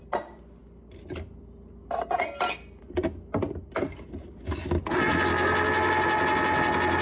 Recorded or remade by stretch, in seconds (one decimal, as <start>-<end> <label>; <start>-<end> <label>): 0.0-7.0 recorded